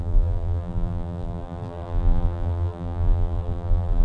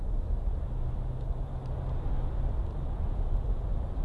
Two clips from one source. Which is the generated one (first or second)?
first